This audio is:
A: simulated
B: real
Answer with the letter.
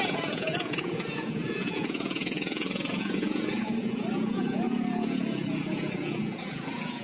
A